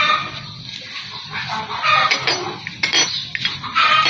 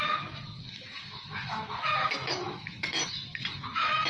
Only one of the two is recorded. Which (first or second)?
first